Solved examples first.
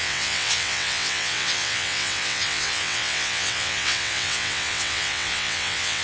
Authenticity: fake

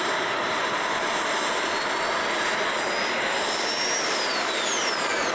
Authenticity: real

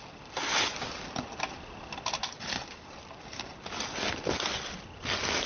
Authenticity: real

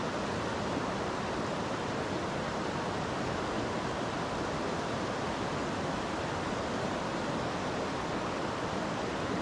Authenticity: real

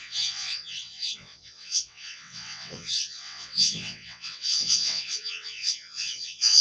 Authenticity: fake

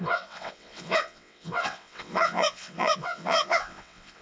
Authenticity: fake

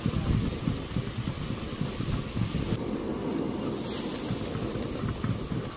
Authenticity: real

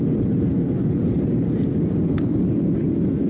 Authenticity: real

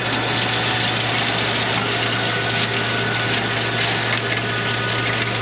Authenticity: real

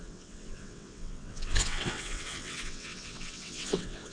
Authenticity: fake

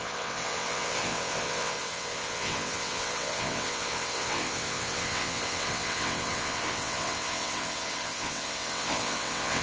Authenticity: fake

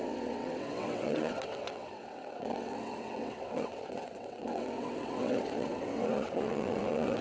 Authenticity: fake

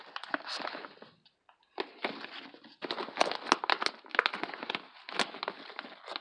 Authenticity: real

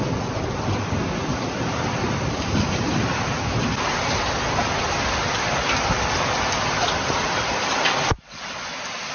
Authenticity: real